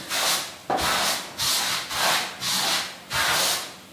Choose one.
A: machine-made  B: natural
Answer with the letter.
B